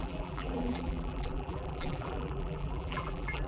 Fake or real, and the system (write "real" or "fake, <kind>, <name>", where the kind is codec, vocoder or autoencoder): fake, vocoder, BigVGAN v2